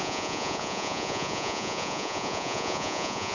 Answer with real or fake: fake